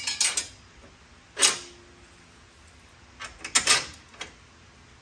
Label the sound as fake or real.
real